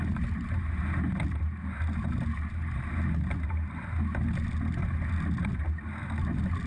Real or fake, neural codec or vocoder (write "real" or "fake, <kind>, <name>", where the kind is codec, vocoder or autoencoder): real